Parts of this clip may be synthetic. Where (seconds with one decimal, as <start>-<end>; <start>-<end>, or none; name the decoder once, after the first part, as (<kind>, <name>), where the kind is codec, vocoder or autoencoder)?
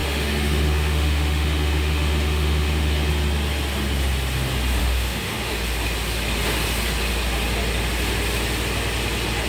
0.0-3.1 (autoencoder, DAC-VAE); 4.8-5.5